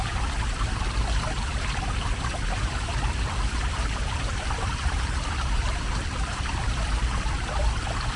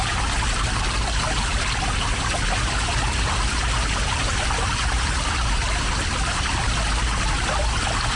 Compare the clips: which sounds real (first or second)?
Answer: second